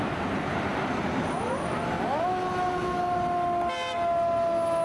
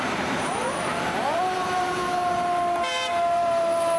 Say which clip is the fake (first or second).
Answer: second